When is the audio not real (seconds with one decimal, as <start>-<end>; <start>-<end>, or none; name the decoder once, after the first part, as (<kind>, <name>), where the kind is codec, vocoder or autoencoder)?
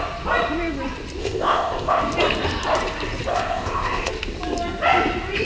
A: 1.2-2.0 (codec, ZipCodec); 3.3-4.1